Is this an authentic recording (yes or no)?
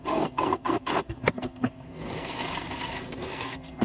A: no